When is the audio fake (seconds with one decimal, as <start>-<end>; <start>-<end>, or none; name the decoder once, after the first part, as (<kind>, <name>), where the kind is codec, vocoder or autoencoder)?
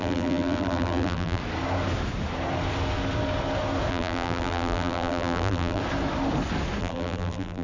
0.0-1.4 (vocoder, BigVGAN v2); 3.9-5.8; 6.8-7.6